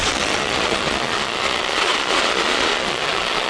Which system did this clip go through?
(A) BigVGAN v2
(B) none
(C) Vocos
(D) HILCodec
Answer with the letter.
C